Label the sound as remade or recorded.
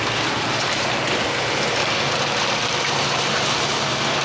recorded